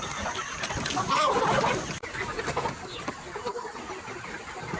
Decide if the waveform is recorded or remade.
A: recorded